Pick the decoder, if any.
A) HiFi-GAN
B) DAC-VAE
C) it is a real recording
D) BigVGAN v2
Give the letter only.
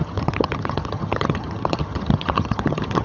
A